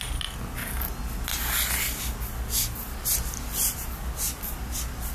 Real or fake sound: real